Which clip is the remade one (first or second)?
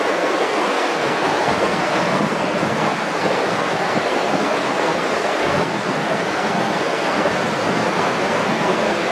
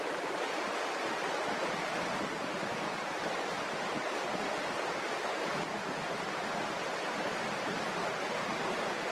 first